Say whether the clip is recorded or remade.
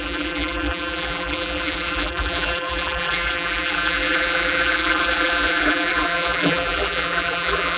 remade